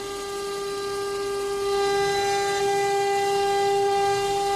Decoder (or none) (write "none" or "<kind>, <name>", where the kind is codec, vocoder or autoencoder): none